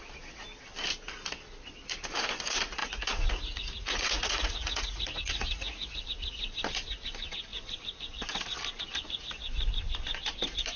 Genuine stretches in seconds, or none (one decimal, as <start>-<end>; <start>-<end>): 0.0-2.8; 6.0-10.8